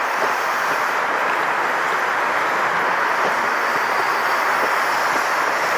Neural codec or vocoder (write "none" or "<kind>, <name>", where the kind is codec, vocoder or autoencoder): none